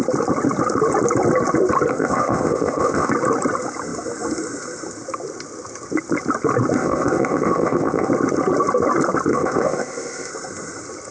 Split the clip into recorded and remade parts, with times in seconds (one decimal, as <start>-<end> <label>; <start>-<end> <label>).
0.0-1.9 recorded; 1.9-3.1 remade; 3.1-6.8 recorded; 6.8-8.1 remade; 8.1-9.3 recorded; 9.3-10.3 remade; 10.3-11.1 recorded